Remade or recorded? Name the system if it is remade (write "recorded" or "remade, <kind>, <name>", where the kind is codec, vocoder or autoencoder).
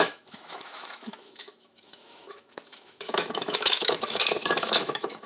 remade, autoencoder, DAC-VAE